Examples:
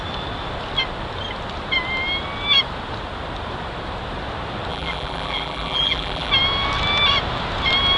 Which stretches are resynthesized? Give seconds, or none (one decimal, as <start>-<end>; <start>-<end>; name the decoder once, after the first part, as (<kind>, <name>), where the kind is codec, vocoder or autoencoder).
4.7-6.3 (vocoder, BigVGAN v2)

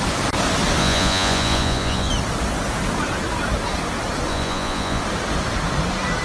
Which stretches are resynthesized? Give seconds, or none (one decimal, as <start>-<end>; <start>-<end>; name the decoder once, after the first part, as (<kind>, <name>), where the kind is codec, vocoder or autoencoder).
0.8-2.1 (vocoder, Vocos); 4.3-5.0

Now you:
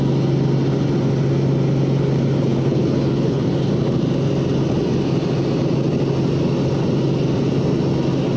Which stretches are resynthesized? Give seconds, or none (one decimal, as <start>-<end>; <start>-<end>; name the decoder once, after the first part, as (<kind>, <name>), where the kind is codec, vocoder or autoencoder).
2.5-3.7 (codec, HILCodec)

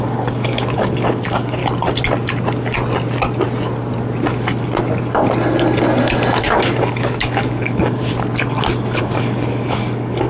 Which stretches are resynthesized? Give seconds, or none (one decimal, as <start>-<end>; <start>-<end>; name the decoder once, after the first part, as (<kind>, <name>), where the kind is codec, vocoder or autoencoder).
0.0-1.6 (codec, DAC); 6.4-8.0; 9.0-10.3

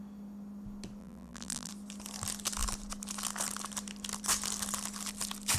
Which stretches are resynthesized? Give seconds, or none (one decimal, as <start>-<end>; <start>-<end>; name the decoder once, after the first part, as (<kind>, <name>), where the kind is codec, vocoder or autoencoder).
1.0-1.7 (vocoder, BigVGAN v2)

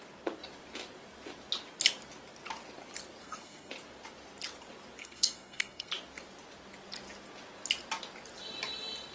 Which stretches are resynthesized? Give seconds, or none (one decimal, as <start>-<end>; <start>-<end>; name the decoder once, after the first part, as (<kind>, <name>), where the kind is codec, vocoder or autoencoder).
3.2-3.7 (codec, SNAC); 5.0-5.9

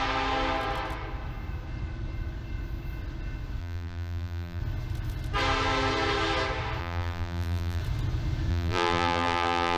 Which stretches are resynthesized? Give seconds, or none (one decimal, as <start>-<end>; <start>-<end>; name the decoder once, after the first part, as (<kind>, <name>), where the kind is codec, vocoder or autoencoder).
3.6-4.6 (vocoder, BigVGAN v2); 6.8-7.8; 8.5-9.8